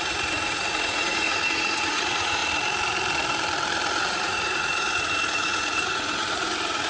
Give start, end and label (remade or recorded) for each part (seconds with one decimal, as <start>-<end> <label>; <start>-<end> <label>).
0.0-2.4 remade; 2.4-4.1 recorded; 4.1-6.9 remade

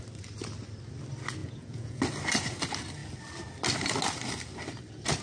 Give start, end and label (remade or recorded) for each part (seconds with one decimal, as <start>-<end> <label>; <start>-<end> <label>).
0.0-1.4 recorded; 1.4-2.0 remade; 2.0-5.2 recorded